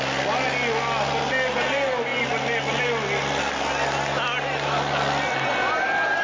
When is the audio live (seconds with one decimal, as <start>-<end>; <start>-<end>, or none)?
0.0-6.2